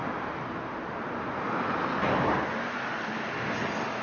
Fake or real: real